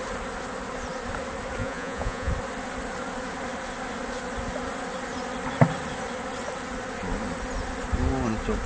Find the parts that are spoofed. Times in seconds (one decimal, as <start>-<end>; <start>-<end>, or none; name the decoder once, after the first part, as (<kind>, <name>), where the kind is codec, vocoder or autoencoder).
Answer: 1.6-2.3 (vocoder, Vocos)